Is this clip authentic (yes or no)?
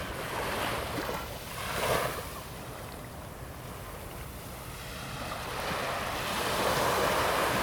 yes